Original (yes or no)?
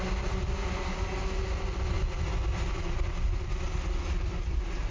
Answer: yes